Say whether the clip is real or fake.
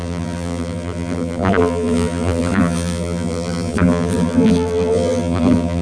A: fake